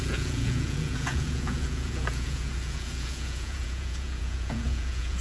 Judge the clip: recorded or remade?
remade